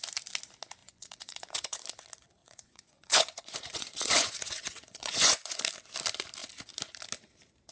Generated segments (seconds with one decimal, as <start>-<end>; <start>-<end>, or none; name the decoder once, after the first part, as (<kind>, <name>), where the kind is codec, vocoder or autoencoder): 0.8-1.8 (vocoder, Vocos); 2.4-5.6